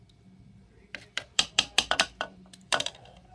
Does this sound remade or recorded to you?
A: remade